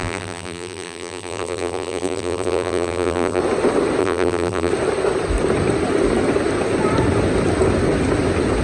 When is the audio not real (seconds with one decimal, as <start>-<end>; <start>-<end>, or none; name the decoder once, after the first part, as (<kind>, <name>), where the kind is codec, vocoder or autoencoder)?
0.0-3.4 (vocoder, BigVGAN v2); 4.0-4.7